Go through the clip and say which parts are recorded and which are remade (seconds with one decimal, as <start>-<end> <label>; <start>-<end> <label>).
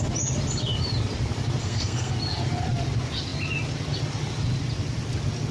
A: 0.0-1.6 recorded; 1.6-2.1 remade; 2.1-5.5 recorded